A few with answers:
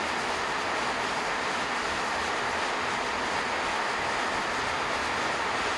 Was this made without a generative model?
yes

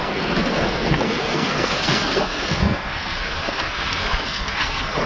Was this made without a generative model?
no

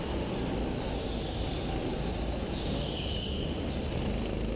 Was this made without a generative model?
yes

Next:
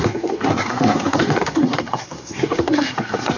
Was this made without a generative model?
no